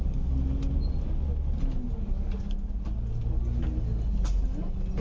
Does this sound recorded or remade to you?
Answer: recorded